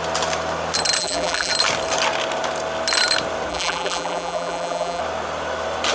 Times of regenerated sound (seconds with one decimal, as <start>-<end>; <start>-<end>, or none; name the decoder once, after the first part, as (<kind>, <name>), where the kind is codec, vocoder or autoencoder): 1.0-1.5 (vocoder, BigVGAN v2); 3.5-5.0